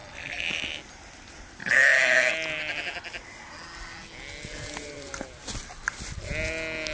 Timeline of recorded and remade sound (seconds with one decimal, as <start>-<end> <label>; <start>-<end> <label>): 0.0-6.9 recorded